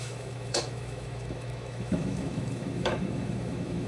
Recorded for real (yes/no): no